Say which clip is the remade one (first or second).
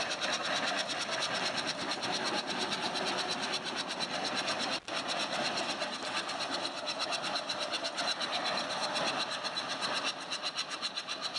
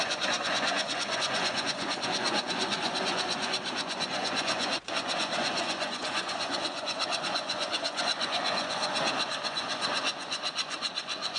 second